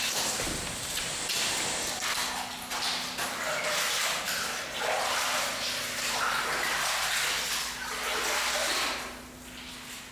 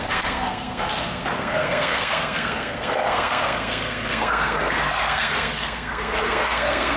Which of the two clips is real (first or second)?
first